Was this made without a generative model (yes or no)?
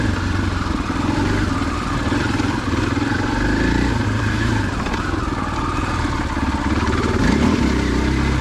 no